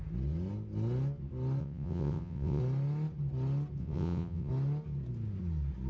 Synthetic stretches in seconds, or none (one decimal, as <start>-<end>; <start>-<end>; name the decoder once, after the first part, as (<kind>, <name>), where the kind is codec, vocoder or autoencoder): 1.6-2.6 (vocoder, WaveNeXt); 3.8-4.5